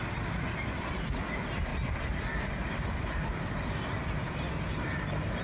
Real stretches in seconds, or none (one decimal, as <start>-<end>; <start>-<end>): 0.0-5.4